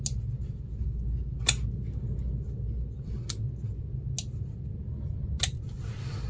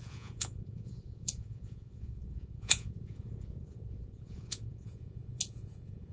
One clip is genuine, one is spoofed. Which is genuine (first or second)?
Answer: first